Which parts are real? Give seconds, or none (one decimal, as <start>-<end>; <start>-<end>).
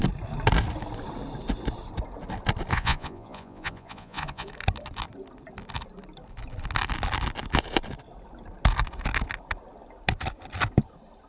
0.0-2.7; 4.5-11.3